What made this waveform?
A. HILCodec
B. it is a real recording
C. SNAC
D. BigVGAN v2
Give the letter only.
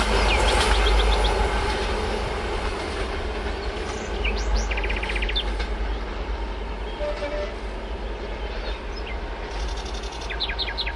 B